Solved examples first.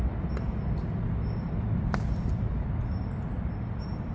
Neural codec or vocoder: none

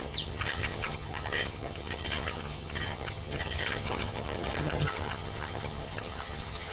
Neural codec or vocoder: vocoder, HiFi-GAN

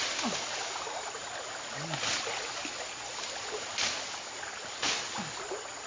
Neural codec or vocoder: none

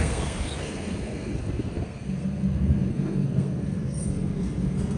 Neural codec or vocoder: codec, SNAC